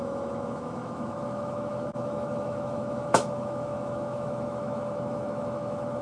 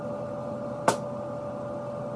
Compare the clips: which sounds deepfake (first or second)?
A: first